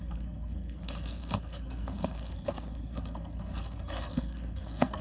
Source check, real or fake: fake